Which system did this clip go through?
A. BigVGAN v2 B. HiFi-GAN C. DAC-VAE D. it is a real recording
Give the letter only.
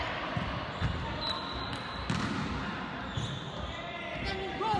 D